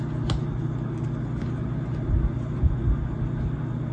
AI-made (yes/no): no